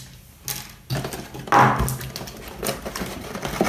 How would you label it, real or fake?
real